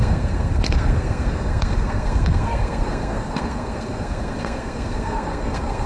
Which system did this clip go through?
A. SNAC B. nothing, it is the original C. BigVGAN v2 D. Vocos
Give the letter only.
A